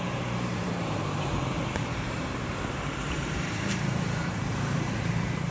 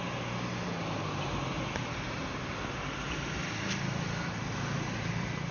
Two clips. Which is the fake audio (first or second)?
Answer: first